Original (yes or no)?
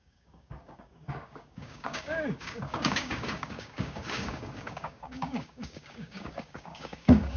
no